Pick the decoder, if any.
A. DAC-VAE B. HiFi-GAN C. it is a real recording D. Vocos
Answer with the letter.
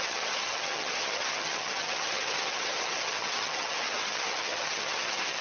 B